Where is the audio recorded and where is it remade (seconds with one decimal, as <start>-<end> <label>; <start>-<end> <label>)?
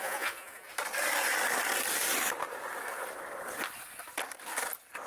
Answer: 0.0-0.7 remade; 0.7-5.1 recorded